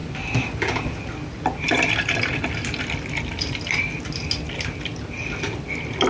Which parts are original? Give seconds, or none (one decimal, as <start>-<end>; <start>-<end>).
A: 0.0-6.1